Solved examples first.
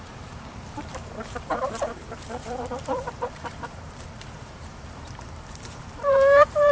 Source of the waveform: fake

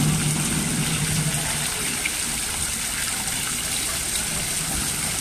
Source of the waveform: real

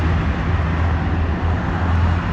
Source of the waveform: real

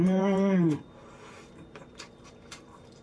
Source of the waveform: fake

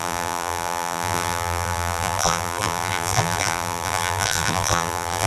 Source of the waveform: fake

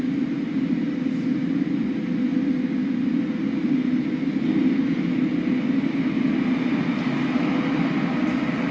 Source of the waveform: real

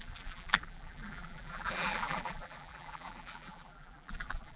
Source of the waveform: fake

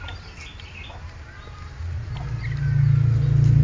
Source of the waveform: real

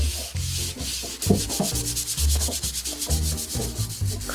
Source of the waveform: real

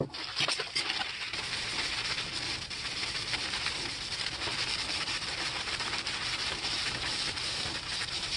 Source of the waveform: fake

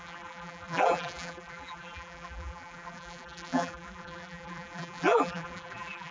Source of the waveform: fake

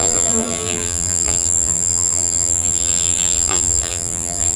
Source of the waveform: fake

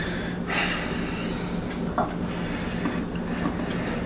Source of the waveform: real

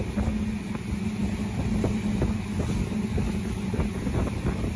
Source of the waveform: real